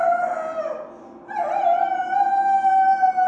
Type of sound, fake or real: real